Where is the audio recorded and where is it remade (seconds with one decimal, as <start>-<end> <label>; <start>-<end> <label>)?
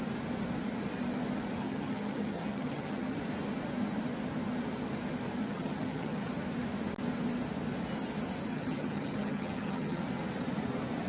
0.0-1.6 recorded; 1.6-3.2 remade; 3.2-5.4 recorded; 5.4-6.3 remade; 6.3-8.5 recorded; 8.5-10.0 remade; 10.0-11.1 recorded